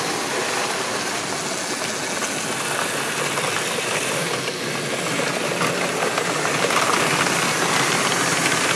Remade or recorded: recorded